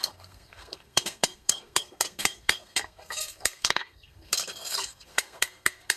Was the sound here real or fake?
fake